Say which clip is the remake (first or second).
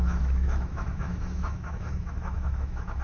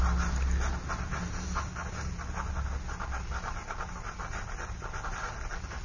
first